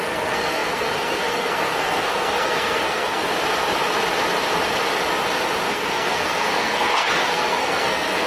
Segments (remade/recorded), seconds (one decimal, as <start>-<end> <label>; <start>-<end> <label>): 0.0-3.2 remade; 3.2-5.7 recorded; 5.7-8.3 remade

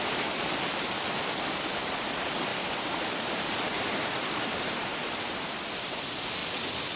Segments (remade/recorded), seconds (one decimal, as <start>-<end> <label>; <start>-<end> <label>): 0.0-2.5 recorded; 2.5-5.5 remade; 5.5-7.0 recorded

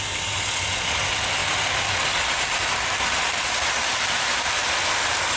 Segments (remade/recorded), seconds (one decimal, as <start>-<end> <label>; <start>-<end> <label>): 0.0-5.4 recorded